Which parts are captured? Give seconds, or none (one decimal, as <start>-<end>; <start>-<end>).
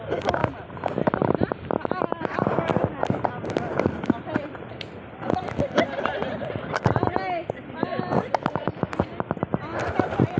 0.0-10.4